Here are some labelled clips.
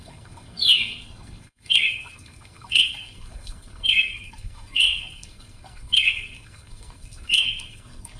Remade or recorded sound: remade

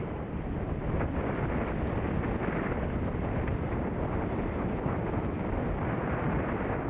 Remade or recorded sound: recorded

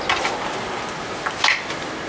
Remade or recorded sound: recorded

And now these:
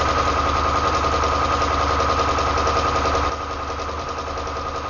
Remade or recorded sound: recorded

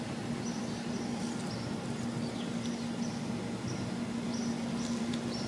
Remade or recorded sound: recorded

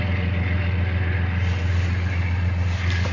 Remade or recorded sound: recorded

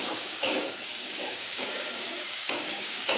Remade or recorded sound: remade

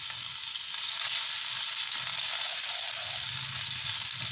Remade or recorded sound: recorded